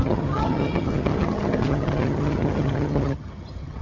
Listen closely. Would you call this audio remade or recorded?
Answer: remade